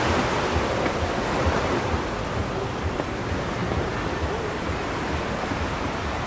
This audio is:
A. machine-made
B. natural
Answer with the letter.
B